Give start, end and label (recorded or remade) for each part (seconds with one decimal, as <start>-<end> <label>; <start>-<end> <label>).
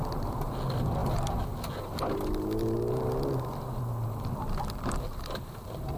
0.0-6.0 recorded